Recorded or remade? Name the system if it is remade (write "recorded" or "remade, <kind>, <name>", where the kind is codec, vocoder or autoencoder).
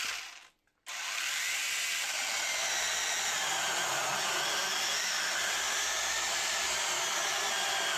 recorded